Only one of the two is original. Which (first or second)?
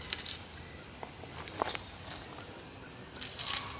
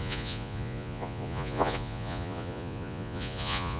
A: first